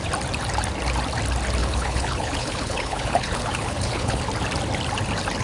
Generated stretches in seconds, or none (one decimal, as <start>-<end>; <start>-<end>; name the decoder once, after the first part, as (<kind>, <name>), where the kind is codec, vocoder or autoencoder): 1.6-4.2 (codec, HILCodec)